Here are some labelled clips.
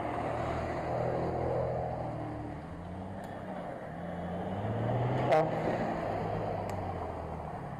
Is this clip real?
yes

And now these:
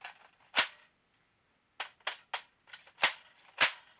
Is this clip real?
yes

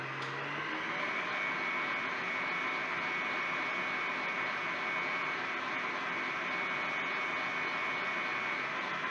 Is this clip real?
yes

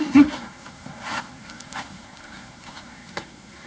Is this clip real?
no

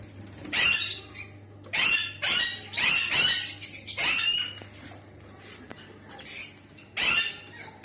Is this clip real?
yes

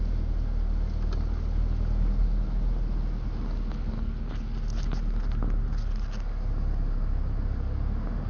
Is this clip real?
yes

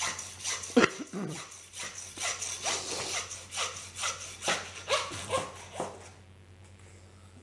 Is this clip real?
yes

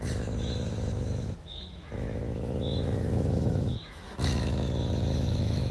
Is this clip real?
no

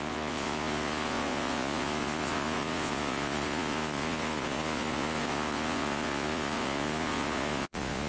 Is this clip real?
no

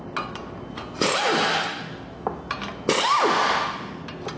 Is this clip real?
yes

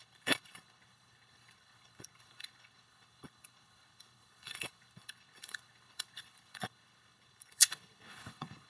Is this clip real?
no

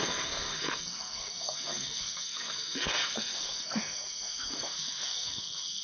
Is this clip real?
no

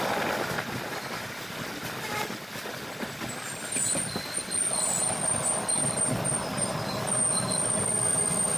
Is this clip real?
yes